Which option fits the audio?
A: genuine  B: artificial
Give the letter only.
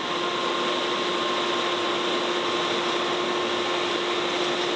A